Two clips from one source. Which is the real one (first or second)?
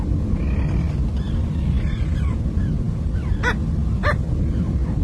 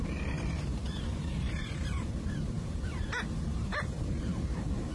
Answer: first